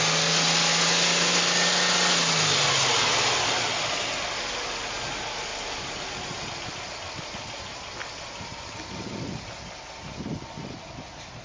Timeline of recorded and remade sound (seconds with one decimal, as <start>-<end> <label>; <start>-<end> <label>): 0.0-11.4 recorded